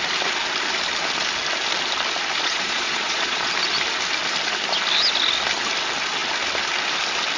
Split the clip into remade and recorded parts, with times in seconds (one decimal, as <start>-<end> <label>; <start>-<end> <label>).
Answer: 0.0-2.4 recorded; 2.4-3.5 remade; 3.5-7.4 recorded